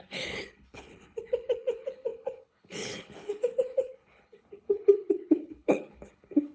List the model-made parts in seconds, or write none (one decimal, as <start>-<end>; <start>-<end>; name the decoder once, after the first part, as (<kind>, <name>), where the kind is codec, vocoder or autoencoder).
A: 0.0-6.5 (codec, HILCodec)